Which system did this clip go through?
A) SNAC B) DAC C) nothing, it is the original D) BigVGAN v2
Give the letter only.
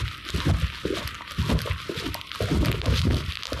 C